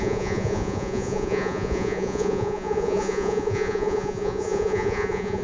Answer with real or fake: fake